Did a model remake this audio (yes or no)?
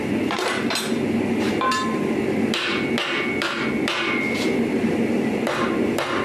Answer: no